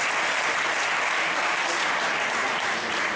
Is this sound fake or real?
real